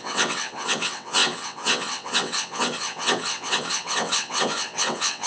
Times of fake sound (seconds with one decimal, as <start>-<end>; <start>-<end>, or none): 0.0-5.3

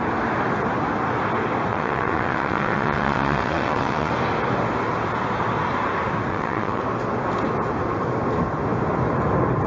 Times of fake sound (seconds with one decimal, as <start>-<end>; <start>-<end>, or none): 1.7-4.1; 6.3-6.8

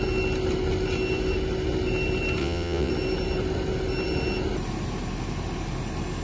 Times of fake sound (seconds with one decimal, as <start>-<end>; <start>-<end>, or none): 2.4-2.9

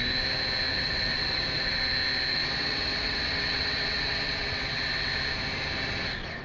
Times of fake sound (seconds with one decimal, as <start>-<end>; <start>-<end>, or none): 0.7-1.8; 2.3-5.1

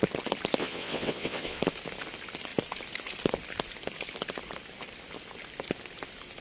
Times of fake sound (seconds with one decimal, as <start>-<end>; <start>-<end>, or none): 0.6-1.6